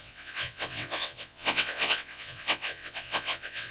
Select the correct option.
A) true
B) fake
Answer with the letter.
B